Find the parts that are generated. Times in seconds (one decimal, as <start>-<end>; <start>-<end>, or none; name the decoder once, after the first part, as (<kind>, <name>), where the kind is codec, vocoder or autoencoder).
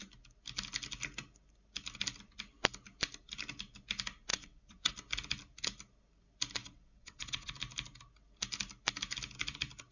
4.3-4.9 (vocoder, WaveNeXt); 6.6-7.5